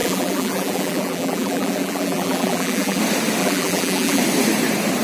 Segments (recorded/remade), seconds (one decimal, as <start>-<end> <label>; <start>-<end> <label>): 0.0-3.0 remade; 3.0-3.4 recorded; 3.4-4.2 remade; 4.2-5.0 recorded